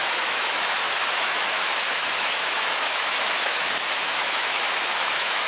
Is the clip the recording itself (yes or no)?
no